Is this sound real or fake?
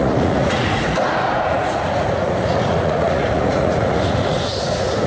fake